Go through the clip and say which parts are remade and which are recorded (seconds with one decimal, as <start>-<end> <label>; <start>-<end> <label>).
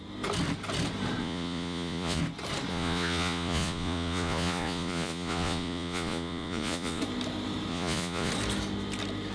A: 0.0-1.2 recorded; 1.2-2.2 remade; 2.2-2.7 recorded; 2.7-7.0 remade; 7.0-7.7 recorded; 7.7-8.3 remade; 8.3-9.3 recorded